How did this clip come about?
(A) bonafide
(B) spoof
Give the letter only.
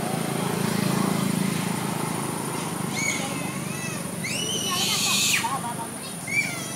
A